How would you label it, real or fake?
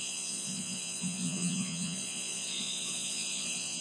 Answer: fake